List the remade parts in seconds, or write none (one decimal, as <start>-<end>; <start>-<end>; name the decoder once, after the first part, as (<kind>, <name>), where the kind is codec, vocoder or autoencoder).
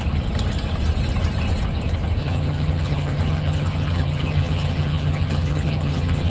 2.2-6.3 (vocoder, HiFi-GAN)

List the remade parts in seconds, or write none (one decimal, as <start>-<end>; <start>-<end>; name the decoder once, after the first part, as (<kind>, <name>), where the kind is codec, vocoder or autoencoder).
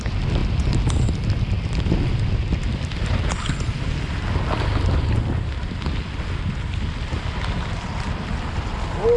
none